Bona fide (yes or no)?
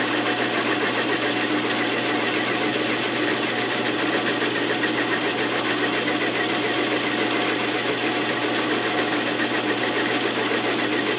yes